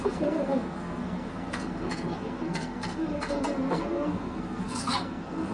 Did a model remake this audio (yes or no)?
yes